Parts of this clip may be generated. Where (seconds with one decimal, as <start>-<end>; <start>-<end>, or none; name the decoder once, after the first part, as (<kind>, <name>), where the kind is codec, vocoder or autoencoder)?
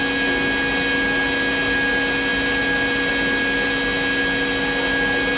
none